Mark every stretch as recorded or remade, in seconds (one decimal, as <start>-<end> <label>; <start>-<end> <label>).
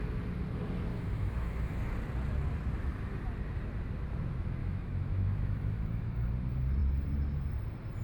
0.0-0.9 recorded; 0.9-1.8 remade; 1.8-4.6 recorded; 4.6-6.3 remade; 6.3-8.0 recorded